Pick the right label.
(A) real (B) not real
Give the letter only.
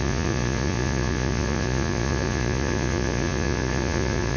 B